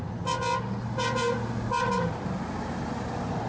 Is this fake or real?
real